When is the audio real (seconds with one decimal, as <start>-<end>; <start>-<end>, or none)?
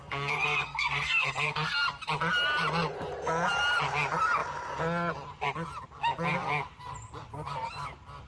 1.7-8.3